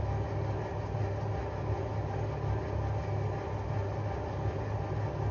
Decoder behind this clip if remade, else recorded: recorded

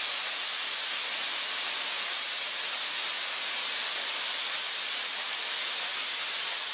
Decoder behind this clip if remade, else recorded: recorded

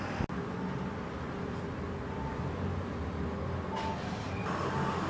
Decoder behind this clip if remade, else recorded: recorded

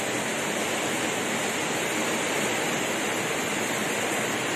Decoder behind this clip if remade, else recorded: recorded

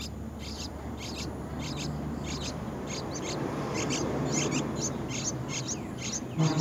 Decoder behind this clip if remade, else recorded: recorded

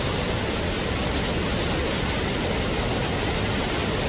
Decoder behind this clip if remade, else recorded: recorded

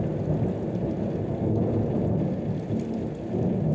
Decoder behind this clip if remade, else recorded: recorded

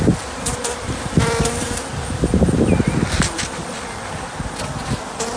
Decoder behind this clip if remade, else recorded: recorded